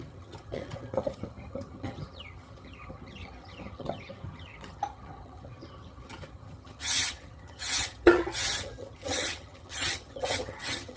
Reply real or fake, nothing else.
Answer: fake